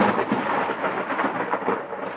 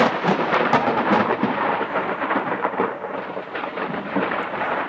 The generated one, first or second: second